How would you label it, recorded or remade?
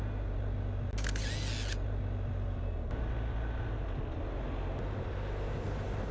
recorded